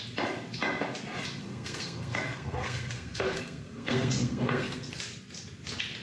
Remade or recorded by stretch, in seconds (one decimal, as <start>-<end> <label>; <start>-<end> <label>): 0.0-1.4 recorded; 1.4-5.0 remade; 5.0-6.0 recorded